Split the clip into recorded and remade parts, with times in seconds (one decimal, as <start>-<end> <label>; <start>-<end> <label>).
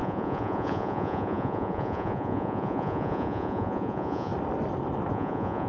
0.0-4.3 remade; 4.3-5.1 recorded; 5.1-5.7 remade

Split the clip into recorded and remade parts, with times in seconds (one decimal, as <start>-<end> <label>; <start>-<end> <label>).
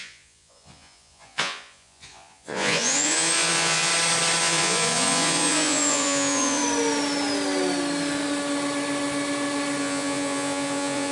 0.0-3.9 remade; 3.9-4.4 recorded; 4.4-6.6 remade; 6.6-9.8 recorded; 9.8-11.1 remade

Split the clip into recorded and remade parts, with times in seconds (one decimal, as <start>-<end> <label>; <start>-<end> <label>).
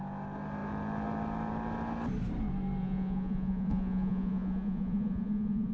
0.0-2.8 recorded; 2.8-5.7 remade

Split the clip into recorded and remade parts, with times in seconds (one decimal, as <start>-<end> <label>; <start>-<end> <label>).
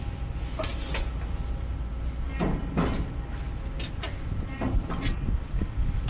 0.0-6.1 recorded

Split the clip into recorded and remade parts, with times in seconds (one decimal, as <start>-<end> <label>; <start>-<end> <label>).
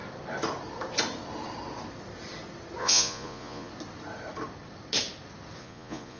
0.0-2.8 recorded; 2.8-3.7 remade; 3.7-5.6 recorded; 5.6-6.2 remade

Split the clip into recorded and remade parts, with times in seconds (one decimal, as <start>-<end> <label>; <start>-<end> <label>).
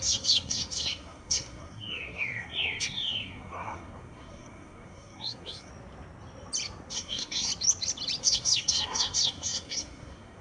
0.0-5.7 remade; 5.7-6.9 recorded; 6.9-7.5 remade; 7.5-8.2 recorded; 8.2-10.4 remade